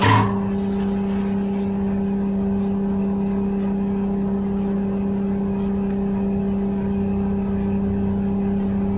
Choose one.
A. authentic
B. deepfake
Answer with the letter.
A